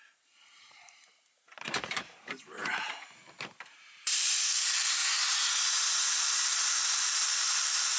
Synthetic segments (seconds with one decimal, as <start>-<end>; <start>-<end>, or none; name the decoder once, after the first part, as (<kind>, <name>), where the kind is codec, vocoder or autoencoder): 0.0-5.0 (vocoder, BigVGAN v2); 6.2-8.0